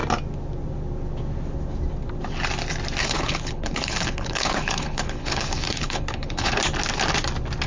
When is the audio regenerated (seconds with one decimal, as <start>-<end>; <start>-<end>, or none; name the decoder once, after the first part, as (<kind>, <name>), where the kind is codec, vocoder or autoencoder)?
3.0-6.5 (codec, HILCodec)